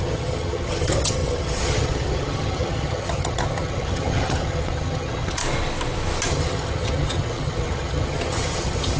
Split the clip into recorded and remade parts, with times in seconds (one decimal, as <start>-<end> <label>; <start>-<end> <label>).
0.0-5.4 remade; 5.4-6.3 recorded; 6.3-9.0 remade